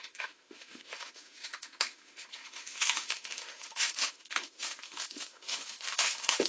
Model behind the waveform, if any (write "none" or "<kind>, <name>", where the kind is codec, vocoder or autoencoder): autoencoder, DAC-VAE